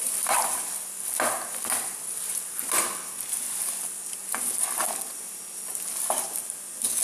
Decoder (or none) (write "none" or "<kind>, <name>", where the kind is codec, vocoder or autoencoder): none